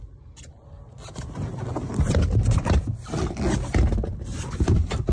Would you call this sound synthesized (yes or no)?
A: no